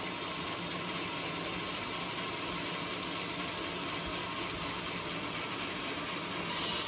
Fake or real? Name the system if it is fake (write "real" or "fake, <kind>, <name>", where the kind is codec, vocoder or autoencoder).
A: real